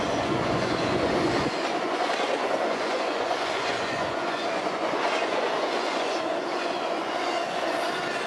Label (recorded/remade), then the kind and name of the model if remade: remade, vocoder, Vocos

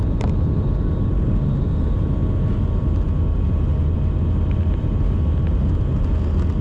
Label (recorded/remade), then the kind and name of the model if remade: recorded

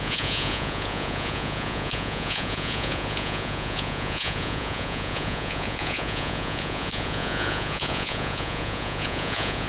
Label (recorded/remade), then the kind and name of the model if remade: remade, vocoder, Vocos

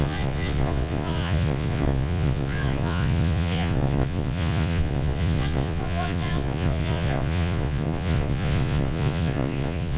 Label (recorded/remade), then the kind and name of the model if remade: remade, vocoder, Vocos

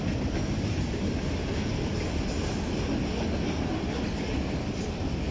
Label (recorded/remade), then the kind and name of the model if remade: recorded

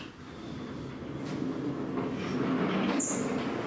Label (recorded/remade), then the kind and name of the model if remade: recorded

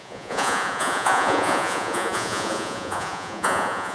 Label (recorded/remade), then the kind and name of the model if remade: remade, vocoder, Vocos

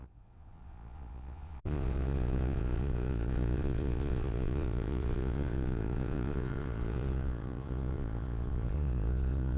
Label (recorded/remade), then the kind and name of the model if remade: remade, vocoder, Vocos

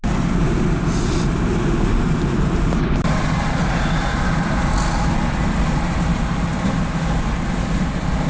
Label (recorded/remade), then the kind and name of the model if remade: recorded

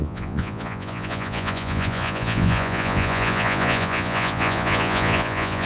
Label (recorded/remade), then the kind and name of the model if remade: remade, vocoder, Vocos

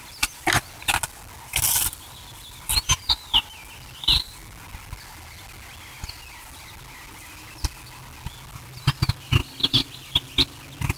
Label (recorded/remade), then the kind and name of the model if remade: recorded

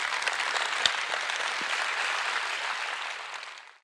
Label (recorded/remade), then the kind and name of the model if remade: recorded